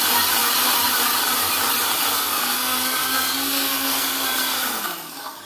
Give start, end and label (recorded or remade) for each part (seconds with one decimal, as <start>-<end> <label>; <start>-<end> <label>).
0.0-2.1 recorded; 2.1-5.4 remade